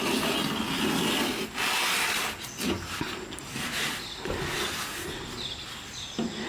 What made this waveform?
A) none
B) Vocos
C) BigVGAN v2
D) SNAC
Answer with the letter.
A